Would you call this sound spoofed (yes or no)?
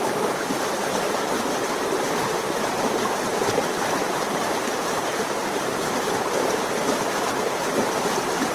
yes